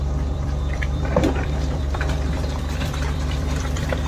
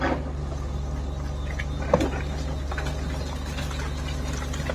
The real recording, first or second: second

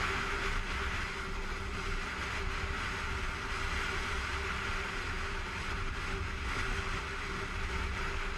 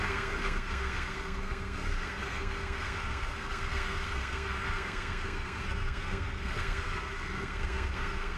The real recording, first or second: first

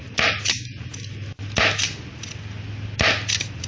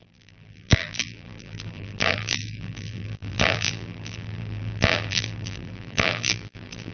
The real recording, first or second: first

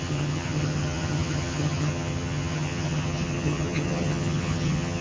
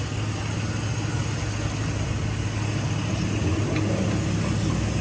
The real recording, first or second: second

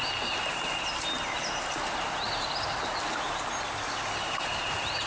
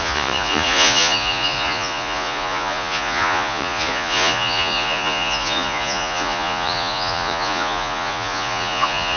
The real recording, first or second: first